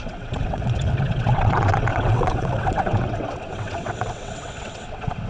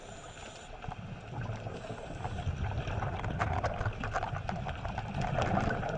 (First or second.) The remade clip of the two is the first